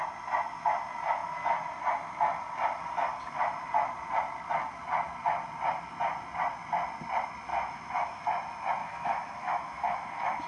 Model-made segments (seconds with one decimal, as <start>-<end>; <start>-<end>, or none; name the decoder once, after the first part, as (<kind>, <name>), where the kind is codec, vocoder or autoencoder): 7.5-8.2 (autoencoder, DAC-VAE); 8.8-10.5